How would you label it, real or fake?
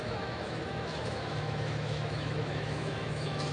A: fake